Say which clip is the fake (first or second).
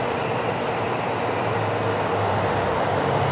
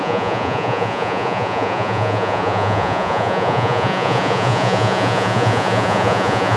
second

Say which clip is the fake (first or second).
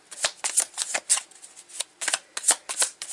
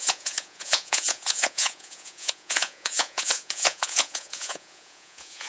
second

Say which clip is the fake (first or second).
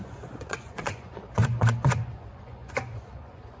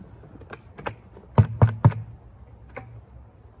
first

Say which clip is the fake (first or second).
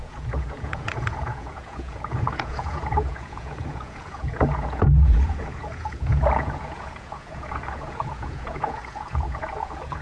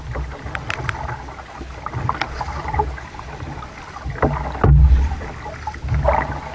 first